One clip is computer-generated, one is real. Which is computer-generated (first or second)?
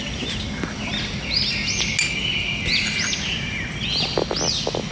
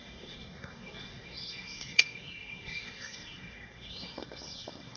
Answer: second